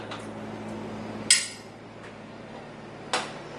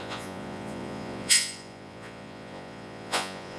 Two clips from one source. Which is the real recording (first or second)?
first